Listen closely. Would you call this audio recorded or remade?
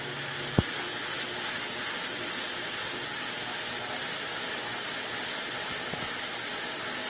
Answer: recorded